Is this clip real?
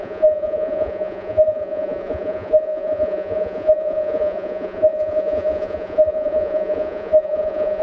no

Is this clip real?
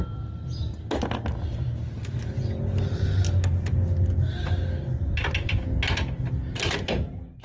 yes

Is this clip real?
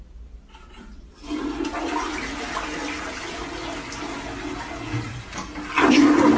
yes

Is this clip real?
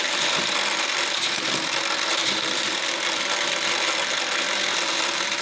yes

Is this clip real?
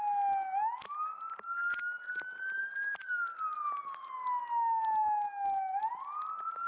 yes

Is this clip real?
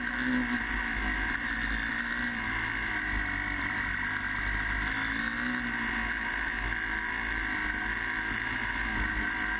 yes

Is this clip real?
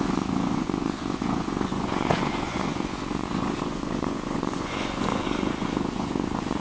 no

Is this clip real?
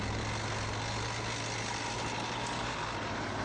yes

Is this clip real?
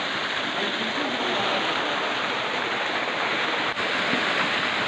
yes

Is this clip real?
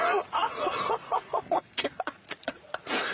no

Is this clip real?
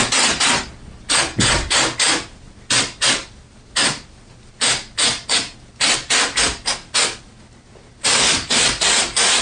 yes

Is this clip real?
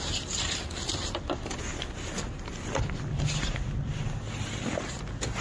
yes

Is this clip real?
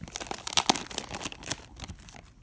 yes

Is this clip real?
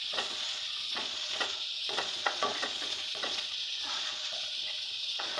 no